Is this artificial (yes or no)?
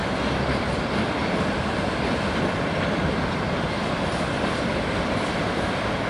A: yes